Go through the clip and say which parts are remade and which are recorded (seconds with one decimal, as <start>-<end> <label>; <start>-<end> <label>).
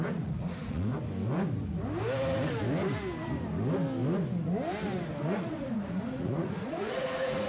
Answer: 0.0-0.9 remade; 0.9-5.2 recorded; 5.2-7.5 remade